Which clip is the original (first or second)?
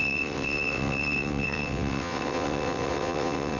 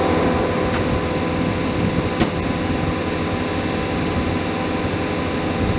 second